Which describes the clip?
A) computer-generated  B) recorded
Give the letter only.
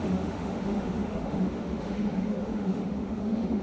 A